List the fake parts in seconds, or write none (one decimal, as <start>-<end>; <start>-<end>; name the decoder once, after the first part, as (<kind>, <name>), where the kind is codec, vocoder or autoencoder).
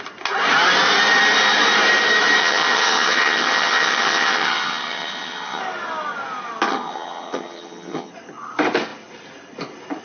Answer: 2.4-5.6 (vocoder, HiFi-GAN); 6.7-8.1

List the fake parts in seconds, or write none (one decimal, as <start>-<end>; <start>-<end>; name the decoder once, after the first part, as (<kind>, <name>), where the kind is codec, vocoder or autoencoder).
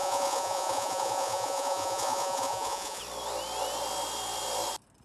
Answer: 0.0-3.0 (vocoder, Vocos)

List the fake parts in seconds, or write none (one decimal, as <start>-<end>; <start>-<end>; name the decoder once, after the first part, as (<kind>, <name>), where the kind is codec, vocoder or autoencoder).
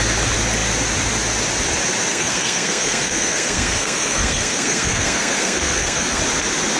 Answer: 2.1-6.2 (codec, SNAC)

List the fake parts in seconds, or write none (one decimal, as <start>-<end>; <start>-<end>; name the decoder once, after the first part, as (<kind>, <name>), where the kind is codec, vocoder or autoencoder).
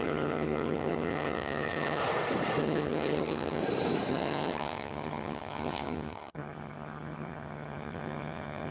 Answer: 0.0-2.0 (vocoder, HiFi-GAN); 2.6-3.6; 4.1-8.7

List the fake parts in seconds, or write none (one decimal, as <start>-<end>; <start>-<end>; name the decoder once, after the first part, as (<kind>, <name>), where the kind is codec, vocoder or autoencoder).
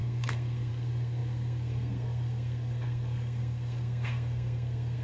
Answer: 0.0-5.0 (codec, SNAC)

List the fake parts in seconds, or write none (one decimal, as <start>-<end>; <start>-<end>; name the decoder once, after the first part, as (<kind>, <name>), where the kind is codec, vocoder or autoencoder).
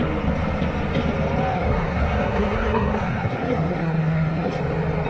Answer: 1.5-4.6 (codec, SNAC)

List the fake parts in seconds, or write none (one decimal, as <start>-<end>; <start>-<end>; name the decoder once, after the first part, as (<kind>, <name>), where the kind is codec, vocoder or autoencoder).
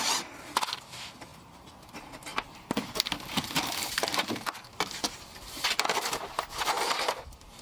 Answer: 1.3-1.9 (vocoder, BigVGAN v2); 2.3-6.9